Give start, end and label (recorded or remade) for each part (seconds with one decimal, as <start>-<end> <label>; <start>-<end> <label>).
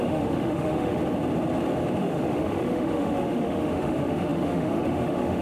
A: 0.0-1.0 remade; 1.0-2.0 recorded; 2.0-5.4 remade